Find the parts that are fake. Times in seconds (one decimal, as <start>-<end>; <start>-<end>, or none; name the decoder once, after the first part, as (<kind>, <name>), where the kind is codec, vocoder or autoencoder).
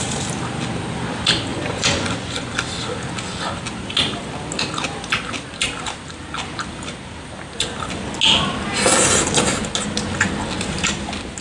1.5-2.5 (vocoder, Vocos)